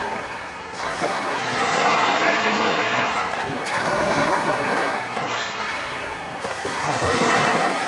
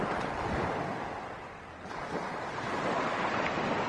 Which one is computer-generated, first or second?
first